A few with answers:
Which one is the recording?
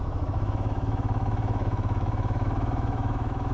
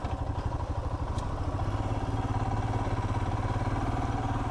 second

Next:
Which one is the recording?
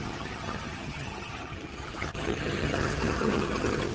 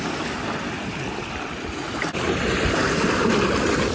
second